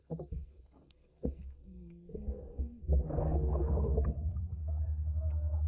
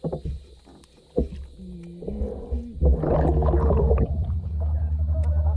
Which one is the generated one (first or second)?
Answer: first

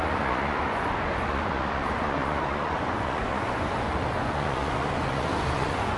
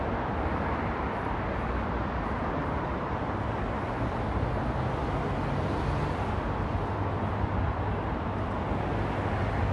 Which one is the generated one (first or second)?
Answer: first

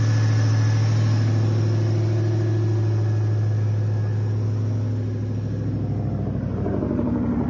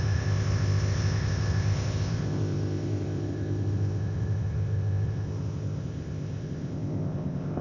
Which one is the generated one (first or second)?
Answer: second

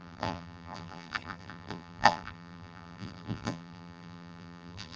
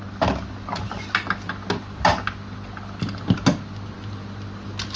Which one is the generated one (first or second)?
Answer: first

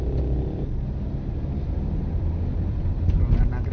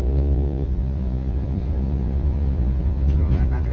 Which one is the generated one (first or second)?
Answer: second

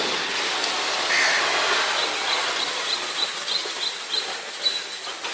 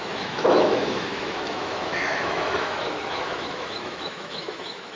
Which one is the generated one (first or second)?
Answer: second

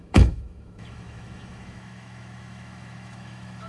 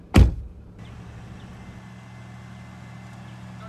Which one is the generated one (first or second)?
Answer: first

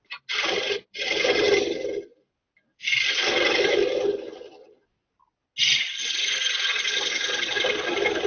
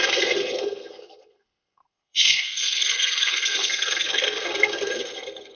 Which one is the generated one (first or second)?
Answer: second